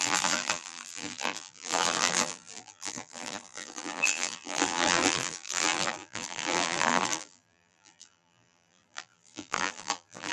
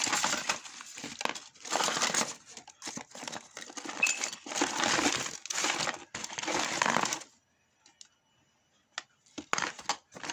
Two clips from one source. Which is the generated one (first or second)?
first